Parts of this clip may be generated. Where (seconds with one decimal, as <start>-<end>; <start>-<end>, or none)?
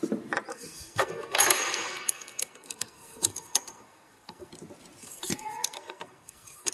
0.5-4.5; 5.0-6.7